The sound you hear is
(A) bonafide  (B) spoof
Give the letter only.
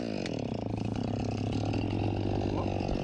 A